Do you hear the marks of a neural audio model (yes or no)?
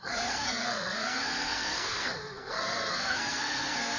yes